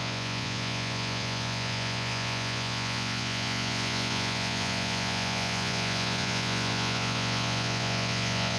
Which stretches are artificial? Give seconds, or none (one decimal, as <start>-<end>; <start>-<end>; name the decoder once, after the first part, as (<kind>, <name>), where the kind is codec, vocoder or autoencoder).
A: 0.0-8.6 (vocoder, Vocos)